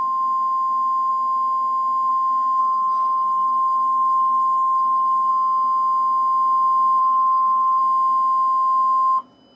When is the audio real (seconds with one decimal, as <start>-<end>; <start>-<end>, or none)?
0.0-2.6; 5.3-7.0; 7.8-9.6